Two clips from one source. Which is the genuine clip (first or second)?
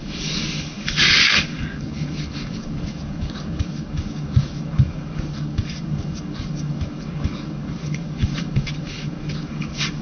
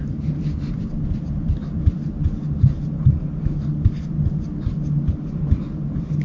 second